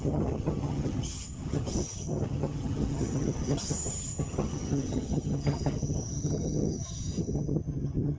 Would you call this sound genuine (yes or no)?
no